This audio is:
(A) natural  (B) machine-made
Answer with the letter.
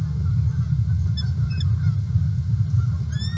A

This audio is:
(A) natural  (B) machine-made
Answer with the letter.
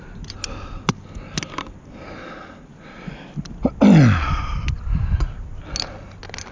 A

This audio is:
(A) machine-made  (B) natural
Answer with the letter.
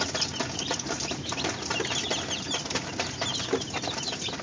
B